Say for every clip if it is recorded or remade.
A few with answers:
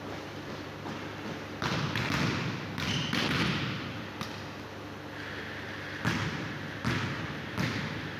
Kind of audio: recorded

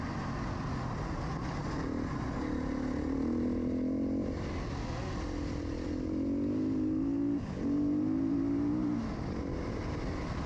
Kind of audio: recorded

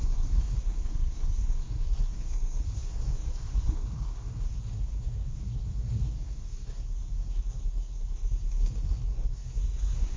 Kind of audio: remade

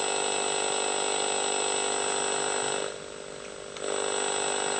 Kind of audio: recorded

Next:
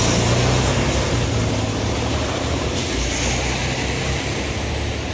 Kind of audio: recorded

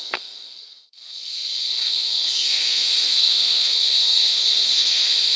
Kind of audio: remade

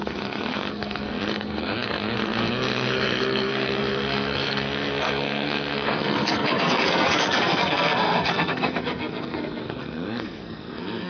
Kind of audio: remade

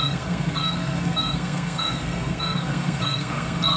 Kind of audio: remade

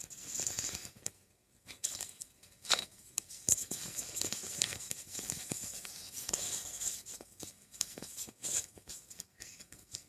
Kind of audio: remade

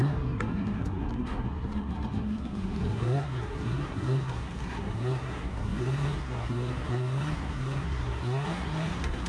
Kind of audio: remade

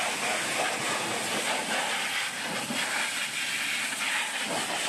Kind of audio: recorded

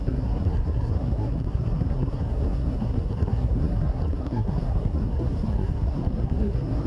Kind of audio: remade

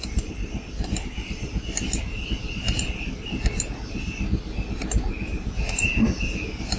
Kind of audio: recorded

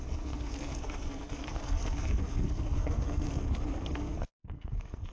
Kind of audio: remade